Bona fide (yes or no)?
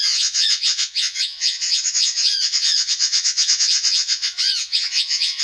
no